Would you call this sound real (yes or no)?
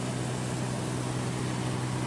yes